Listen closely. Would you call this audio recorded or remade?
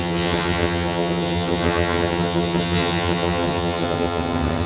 remade